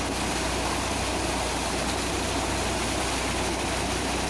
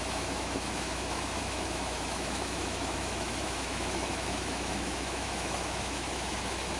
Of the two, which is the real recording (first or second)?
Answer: first